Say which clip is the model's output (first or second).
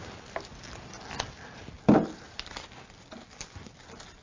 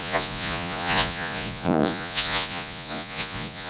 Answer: second